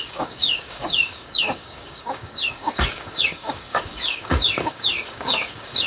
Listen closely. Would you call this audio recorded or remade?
remade